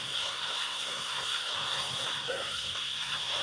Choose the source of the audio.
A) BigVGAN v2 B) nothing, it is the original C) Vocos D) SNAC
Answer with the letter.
D